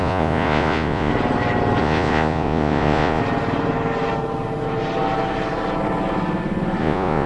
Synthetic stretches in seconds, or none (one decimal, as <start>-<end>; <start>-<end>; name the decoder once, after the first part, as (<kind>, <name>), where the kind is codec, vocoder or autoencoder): 0.0-1.1 (vocoder, Vocos); 1.8-3.2; 6.8-7.3